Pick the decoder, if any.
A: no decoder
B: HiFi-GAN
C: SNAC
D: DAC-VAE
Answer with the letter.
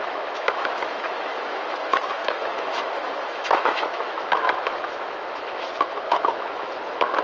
D